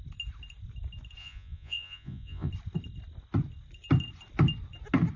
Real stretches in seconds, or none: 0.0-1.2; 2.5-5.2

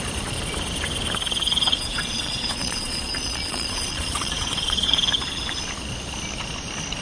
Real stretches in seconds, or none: 0.0-1.7; 5.0-7.0

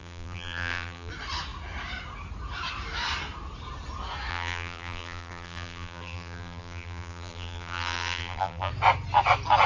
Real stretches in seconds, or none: 1.1-4.3; 8.7-9.7

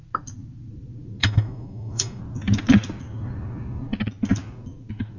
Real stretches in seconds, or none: 0.0-1.2; 2.2-5.2

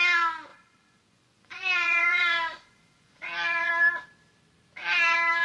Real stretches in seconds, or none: 0.0-0.5; 3.7-5.4